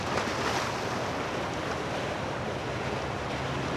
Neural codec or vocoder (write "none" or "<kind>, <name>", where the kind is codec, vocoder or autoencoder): none